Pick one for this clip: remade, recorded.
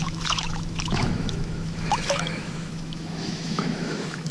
remade